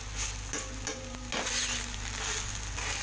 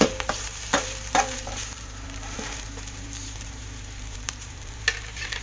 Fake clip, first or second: second